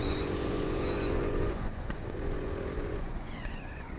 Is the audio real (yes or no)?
no